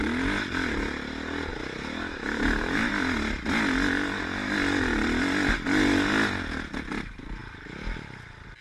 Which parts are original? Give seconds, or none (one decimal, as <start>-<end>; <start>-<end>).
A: 0.0-1.5; 2.9-8.6